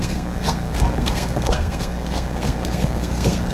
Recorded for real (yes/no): no